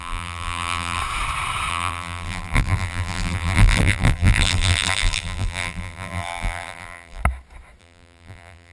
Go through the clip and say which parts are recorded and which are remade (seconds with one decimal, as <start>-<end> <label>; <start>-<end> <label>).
0.0-1.0 remade; 1.0-1.7 recorded; 1.7-7.2 remade; 7.2-7.8 recorded; 7.8-8.7 remade